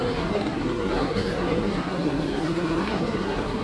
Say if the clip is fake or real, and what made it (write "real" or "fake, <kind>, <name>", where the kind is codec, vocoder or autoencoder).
fake, codec, SNAC